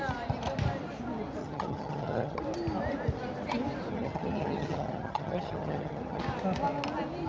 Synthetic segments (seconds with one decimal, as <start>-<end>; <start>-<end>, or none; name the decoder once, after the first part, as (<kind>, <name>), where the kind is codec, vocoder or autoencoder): 1.4-2.4 (vocoder, HiFi-GAN); 3.9-6.2